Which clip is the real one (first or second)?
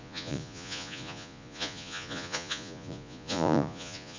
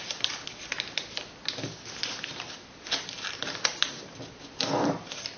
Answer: second